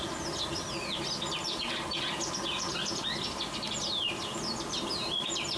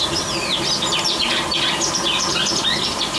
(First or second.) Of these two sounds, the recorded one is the first